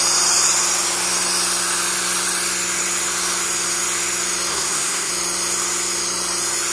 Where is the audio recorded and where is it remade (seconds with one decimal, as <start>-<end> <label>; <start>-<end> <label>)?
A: 0.0-4.5 recorded; 4.5-5.1 remade; 5.1-6.7 recorded